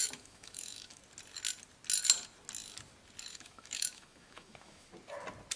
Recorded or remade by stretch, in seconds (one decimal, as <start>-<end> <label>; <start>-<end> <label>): 0.0-1.0 remade; 1.0-3.3 recorded; 3.3-4.9 remade; 4.9-5.6 recorded